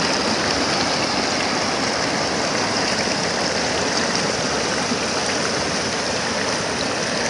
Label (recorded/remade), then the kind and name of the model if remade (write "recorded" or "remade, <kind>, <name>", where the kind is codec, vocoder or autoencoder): recorded